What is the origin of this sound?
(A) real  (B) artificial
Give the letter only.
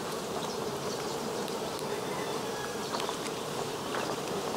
B